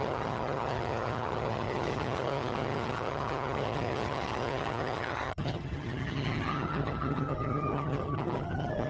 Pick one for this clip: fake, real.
fake